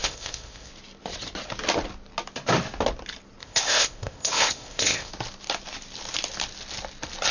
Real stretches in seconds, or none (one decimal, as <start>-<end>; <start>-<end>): 0.7-3.4; 5.1-7.3